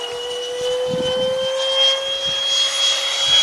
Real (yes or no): yes